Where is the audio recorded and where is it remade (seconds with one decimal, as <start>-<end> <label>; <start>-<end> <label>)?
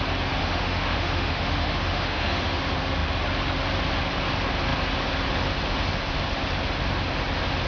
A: 0.0-0.4 recorded; 0.4-2.6 remade; 2.6-7.7 recorded